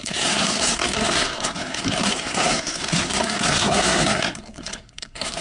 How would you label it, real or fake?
fake